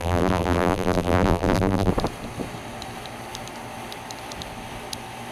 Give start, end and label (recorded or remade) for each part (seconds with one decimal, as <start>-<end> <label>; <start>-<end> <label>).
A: 0.0-1.9 remade; 1.9-5.3 recorded